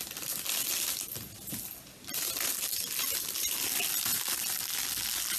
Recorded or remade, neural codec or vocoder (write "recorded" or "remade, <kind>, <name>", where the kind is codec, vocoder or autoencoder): recorded